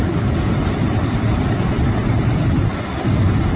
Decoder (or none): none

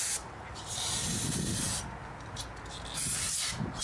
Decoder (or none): none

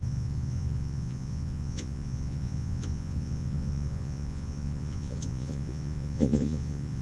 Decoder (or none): vocoder, Vocos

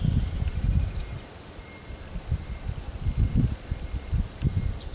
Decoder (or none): none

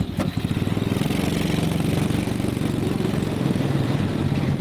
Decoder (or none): none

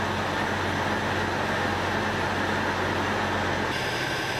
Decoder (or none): none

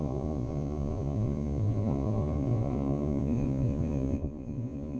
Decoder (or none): vocoder, Vocos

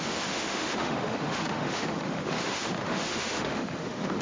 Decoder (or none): autoencoder, DAC-VAE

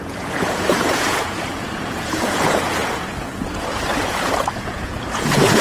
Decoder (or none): vocoder, Vocos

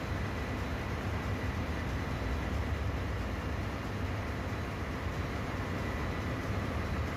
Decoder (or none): none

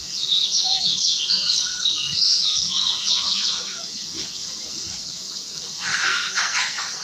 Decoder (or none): codec, SNAC